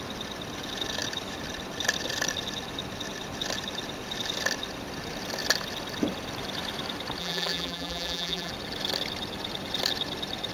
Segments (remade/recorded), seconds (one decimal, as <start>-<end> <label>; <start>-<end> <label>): 0.0-7.2 recorded; 7.2-8.5 remade; 8.5-10.5 recorded